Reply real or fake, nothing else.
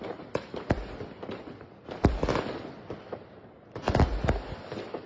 real